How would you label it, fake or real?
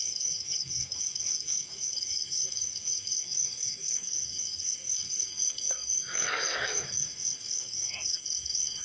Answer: fake